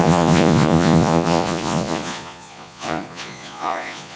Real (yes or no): no